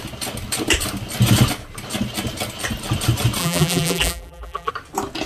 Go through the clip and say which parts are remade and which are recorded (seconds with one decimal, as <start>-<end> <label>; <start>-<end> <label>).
0.0-3.4 recorded; 3.4-4.7 remade; 4.7-5.3 recorded